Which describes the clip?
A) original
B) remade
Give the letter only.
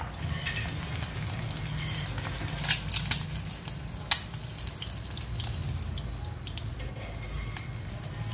A